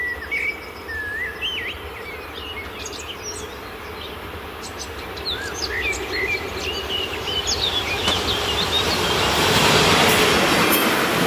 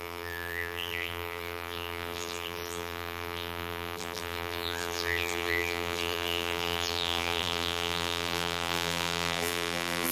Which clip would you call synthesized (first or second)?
second